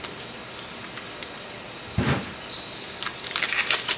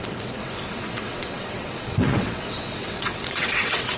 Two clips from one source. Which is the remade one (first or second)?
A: second